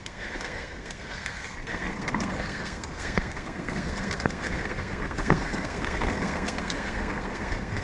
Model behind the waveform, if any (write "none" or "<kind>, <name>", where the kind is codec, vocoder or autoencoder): codec, SNAC